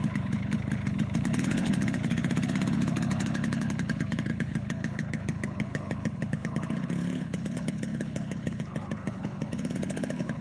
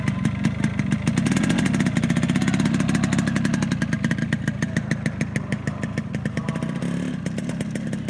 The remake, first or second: first